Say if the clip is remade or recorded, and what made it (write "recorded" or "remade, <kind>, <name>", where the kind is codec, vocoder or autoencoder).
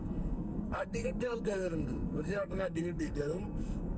remade, codec, SNAC